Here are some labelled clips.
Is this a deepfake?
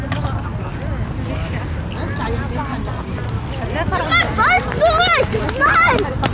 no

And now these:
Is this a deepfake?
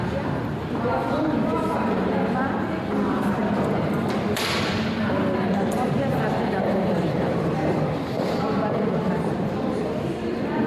yes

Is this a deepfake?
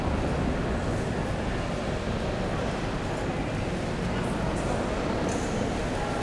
no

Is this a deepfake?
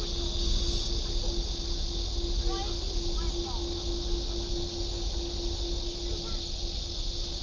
no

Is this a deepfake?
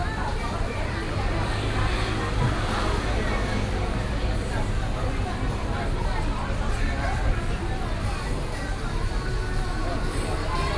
no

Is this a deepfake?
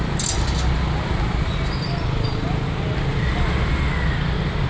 no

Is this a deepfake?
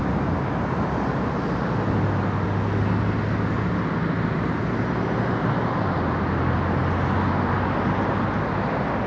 no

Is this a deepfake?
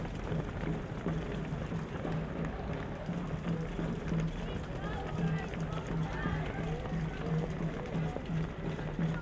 no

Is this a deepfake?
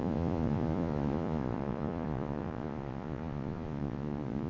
yes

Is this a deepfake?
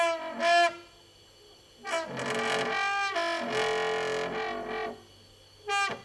no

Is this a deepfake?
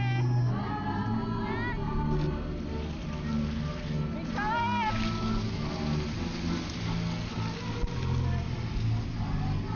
no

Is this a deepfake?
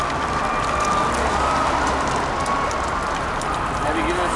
no